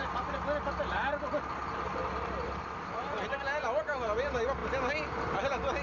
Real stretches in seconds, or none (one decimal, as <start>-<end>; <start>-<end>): 0.0-1.6; 3.2-5.8